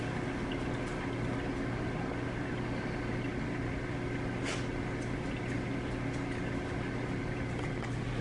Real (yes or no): yes